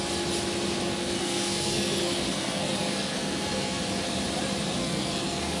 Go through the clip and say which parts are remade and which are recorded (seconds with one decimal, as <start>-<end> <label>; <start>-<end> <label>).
0.0-1.0 recorded; 1.0-3.8 remade; 3.8-4.8 recorded; 4.8-5.6 remade